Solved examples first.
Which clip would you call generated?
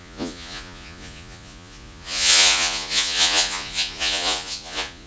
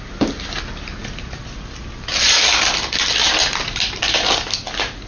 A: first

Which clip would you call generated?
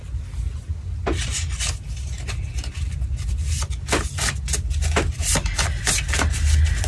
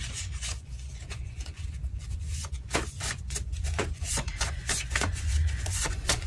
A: second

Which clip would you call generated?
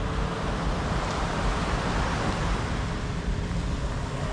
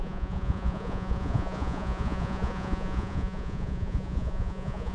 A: second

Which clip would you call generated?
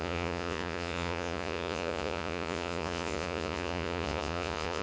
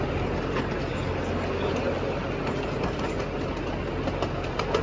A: first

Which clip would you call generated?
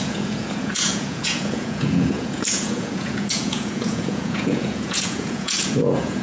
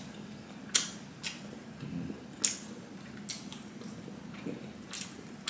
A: first